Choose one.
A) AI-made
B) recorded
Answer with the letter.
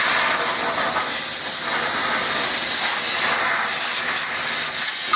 B